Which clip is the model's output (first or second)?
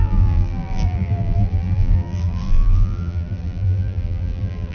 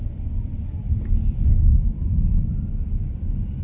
first